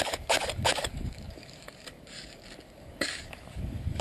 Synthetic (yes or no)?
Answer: yes